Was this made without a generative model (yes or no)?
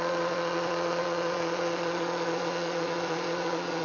no